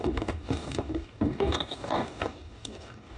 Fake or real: fake